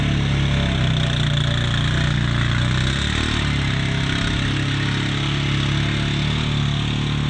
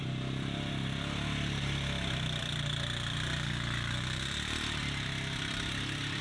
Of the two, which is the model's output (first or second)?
second